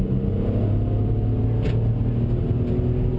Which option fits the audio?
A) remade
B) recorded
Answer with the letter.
B